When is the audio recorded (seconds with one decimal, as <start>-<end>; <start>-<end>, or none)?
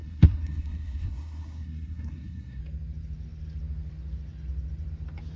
2.6-5.4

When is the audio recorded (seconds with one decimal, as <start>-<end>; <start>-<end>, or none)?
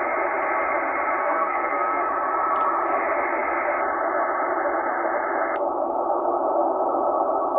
0.0-1.2; 2.0-7.6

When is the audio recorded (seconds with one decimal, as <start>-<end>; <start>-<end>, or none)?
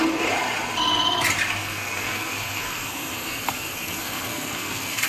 0.0-1.6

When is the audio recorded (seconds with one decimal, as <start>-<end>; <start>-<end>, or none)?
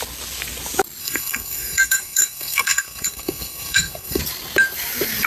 0.0-1.0; 4.2-5.3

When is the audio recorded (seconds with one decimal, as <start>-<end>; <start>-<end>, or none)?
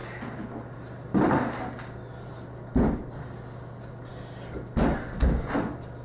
0.0-6.0